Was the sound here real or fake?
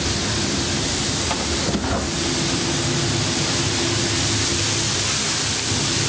real